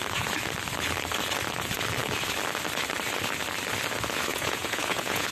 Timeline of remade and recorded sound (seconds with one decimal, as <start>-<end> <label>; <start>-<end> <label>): 0.0-4.3 recorded; 4.3-5.3 remade